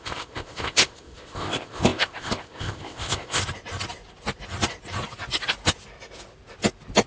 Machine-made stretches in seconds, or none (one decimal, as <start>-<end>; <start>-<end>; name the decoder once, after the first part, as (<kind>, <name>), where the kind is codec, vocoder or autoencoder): 0.0-3.4 (codec, ZipCodec)